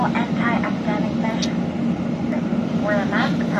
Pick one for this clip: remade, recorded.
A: recorded